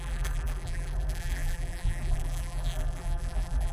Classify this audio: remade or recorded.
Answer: remade